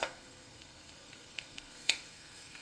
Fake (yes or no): yes